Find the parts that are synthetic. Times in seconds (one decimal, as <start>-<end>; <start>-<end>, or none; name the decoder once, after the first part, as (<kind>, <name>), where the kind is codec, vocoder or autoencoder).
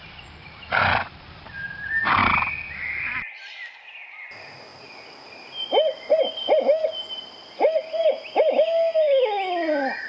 none